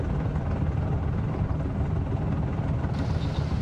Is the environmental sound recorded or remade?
recorded